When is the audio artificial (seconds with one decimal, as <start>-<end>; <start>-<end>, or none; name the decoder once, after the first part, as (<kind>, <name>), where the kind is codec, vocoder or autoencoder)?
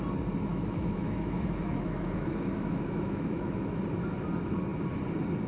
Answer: 0.5-3.8 (autoencoder, DAC-VAE)